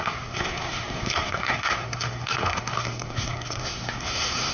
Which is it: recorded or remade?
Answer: remade